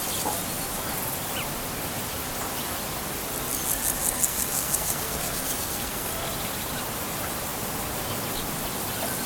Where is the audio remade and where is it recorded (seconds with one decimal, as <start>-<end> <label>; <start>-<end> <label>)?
0.0-4.0 recorded; 4.0-6.1 remade; 6.1-9.3 recorded